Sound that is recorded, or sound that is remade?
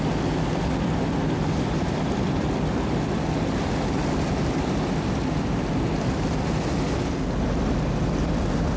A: recorded